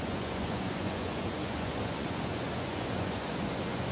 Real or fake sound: fake